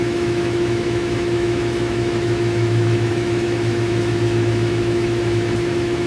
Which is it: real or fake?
fake